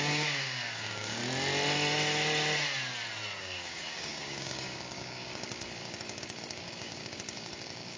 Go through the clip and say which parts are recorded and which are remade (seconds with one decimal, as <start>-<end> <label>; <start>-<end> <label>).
0.0-1.2 remade; 1.2-3.4 recorded; 3.4-8.0 remade